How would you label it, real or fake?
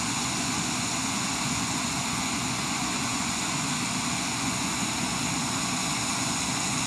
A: fake